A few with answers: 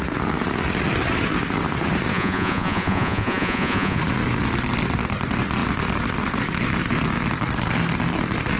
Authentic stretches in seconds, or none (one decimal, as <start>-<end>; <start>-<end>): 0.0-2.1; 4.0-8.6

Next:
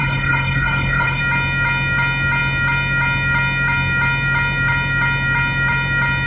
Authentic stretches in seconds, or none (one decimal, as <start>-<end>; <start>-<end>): 1.2-6.3

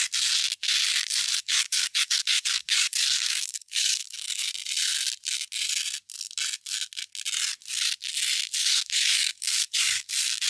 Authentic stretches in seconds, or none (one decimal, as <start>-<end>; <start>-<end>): 0.0-1.3; 4.5-8.6; 10.1-10.5

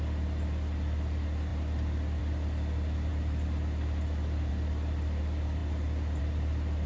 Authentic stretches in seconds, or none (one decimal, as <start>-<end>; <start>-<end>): 0.0-6.9

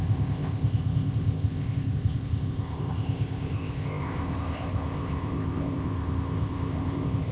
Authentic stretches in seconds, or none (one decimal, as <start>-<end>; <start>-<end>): none